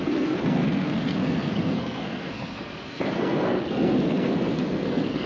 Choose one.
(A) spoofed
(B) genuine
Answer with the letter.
A